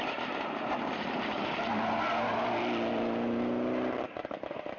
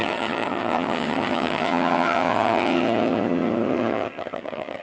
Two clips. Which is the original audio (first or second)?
first